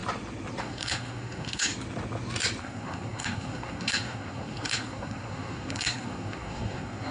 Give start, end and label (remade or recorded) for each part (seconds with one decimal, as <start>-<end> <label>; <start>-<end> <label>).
0.0-0.6 recorded; 0.6-1.7 remade; 1.7-2.6 recorded; 2.6-7.1 remade